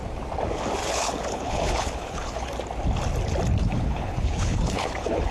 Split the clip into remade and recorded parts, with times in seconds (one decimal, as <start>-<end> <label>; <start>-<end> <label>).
0.0-0.8 recorded; 0.8-2.5 remade; 2.5-3.6 recorded; 3.6-5.3 remade